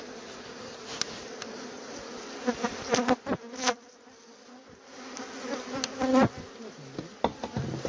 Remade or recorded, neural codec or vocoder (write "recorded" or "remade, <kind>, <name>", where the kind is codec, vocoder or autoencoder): recorded